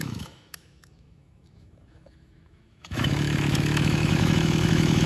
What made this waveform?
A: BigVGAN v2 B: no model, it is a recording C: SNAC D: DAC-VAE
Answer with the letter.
D